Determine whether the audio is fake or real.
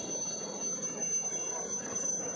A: real